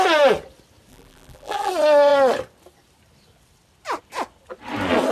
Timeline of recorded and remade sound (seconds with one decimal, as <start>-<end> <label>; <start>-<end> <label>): 0.0-0.9 recorded; 0.9-1.7 remade; 1.7-5.1 recorded